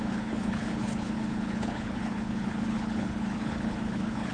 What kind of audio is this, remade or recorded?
remade